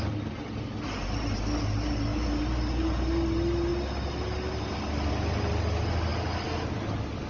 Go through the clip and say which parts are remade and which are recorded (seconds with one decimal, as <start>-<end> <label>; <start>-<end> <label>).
0.0-7.3 recorded